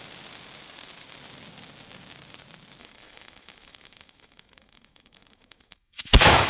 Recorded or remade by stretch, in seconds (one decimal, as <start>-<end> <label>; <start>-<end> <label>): 0.0-2.8 recorded; 2.8-6.5 remade